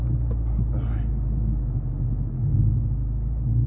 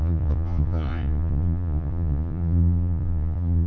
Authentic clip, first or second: first